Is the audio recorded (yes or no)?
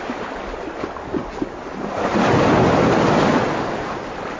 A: yes